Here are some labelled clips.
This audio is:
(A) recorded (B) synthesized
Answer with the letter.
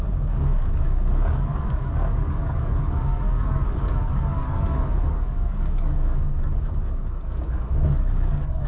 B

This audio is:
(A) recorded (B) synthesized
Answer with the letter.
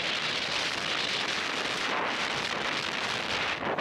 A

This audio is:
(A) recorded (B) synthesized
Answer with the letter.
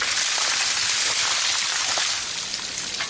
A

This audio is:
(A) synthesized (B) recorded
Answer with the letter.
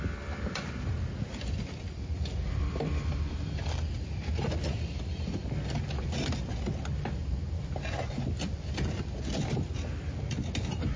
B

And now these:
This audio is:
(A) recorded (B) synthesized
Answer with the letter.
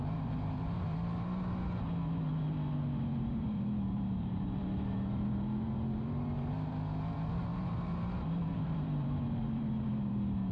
B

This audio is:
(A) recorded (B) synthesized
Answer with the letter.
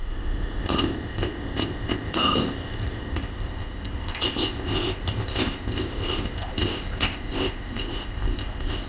B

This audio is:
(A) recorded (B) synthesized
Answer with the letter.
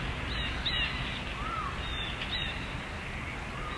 A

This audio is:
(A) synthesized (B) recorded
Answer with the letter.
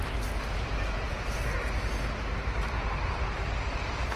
B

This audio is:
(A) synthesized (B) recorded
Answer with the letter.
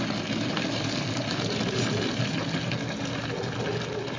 B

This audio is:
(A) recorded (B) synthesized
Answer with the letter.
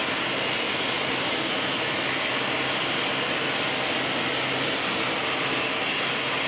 A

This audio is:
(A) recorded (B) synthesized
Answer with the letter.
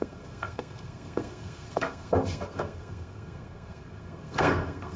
B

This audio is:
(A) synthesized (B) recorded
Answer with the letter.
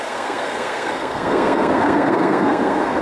A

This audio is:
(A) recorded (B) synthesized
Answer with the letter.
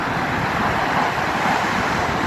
A